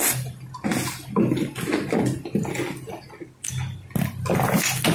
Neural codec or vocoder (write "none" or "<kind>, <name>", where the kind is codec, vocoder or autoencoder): none